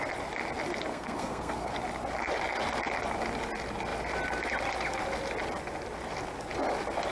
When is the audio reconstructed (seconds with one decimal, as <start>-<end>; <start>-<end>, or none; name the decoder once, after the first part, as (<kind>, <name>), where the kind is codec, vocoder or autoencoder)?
0.9-1.7 (codec, SNAC)